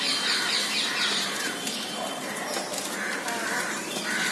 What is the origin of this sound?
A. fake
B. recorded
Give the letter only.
A